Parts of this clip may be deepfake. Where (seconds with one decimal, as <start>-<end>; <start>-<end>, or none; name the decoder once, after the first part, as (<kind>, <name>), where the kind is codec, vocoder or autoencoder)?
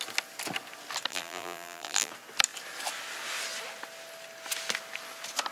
1.1-2.1 (vocoder, BigVGAN v2)